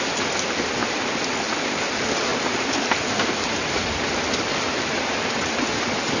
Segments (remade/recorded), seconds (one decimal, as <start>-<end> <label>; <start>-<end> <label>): 0.0-6.2 recorded